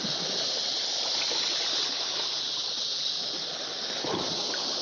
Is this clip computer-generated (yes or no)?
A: yes